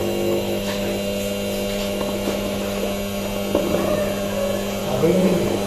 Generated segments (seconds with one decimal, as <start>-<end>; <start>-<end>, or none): 0.0-0.9; 1.8-2.8; 4.8-5.7